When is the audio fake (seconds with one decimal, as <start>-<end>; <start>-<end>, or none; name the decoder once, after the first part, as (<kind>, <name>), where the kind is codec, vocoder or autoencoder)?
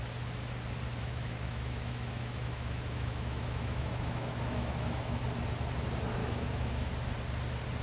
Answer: 1.0-5.2 (autoencoder, DAC-VAE); 6.2-6.9